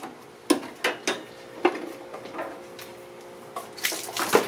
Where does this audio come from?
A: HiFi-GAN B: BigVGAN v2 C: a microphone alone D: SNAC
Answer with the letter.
C